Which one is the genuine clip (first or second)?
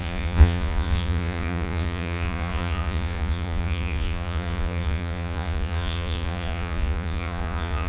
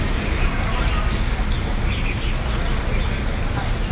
second